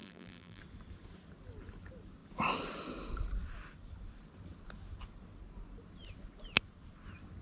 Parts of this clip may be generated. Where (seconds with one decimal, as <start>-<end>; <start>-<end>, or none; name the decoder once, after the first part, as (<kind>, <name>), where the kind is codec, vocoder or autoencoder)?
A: 0.0-0.6 (vocoder, BigVGAN v2)